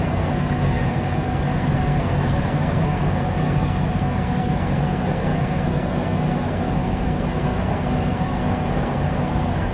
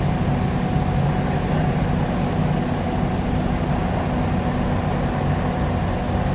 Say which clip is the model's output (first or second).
first